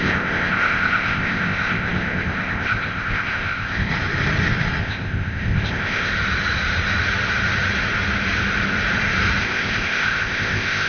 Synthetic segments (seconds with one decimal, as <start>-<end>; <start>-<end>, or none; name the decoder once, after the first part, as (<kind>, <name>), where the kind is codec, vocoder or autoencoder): 0.0-3.9 (codec, ZipCodec); 4.8-6.1; 9.4-10.9